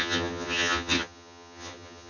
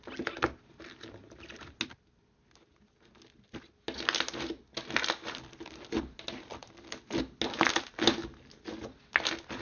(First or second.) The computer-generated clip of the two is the first